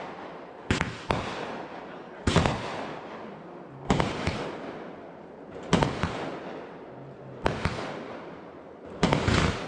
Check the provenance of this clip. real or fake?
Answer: real